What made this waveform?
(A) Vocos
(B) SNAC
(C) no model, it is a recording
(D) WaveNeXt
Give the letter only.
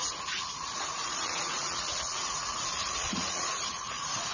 A